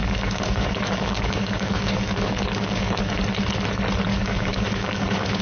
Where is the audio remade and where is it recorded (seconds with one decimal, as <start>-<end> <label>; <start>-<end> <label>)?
0.0-3.2 remade; 3.2-4.1 recorded; 4.1-5.4 remade